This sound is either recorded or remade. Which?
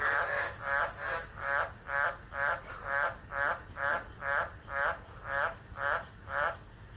recorded